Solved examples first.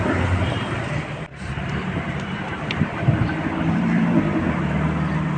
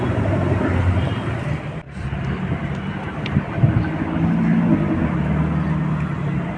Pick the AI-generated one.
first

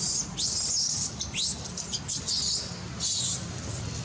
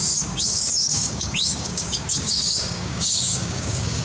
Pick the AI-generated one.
second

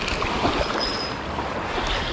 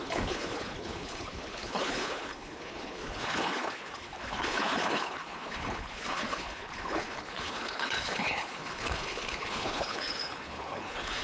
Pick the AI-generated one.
second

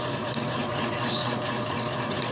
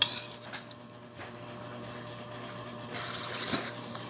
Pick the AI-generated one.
first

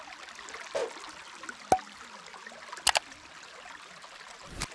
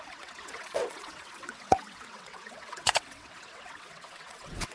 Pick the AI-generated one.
second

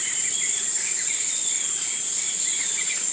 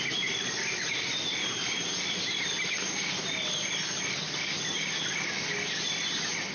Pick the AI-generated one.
first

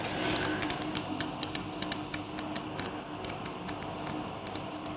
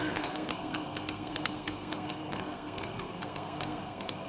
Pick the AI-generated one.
second